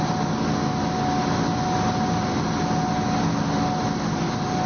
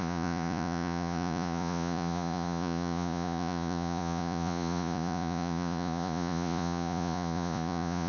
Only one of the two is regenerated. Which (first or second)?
second